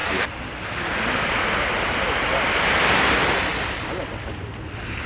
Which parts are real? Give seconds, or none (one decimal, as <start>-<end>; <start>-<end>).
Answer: 0.0-5.1

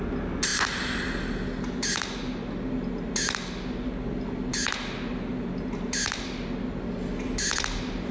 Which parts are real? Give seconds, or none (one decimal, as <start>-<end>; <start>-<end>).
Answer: 0.0-8.1